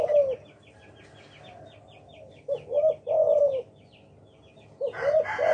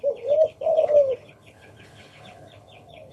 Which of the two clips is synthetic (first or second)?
second